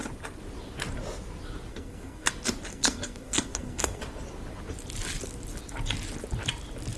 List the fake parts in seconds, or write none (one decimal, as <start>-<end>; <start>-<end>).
1.7-2.3; 2.7-4.0